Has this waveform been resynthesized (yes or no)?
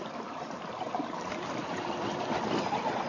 no